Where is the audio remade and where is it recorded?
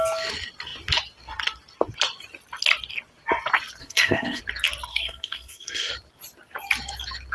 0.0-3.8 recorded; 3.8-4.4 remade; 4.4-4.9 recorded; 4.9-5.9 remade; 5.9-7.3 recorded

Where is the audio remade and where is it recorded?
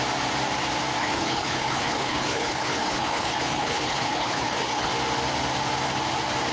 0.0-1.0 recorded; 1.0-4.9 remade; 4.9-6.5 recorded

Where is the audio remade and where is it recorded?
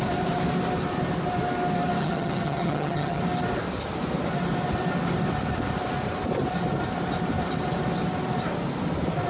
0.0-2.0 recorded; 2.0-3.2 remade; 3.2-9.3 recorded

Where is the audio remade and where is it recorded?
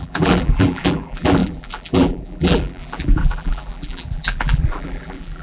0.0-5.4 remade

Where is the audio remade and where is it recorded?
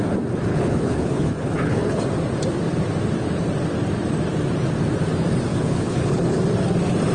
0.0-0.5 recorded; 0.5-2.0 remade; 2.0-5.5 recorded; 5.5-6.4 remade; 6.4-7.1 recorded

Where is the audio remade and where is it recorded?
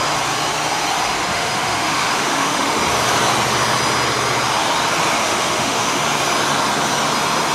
0.0-1.3 recorded; 1.3-2.8 remade; 2.8-5.2 recorded; 5.2-6.0 remade; 6.0-7.5 recorded